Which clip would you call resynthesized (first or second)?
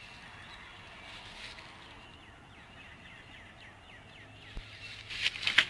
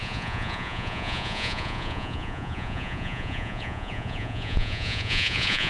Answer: second